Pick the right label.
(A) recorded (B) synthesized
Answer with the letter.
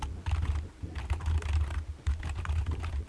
A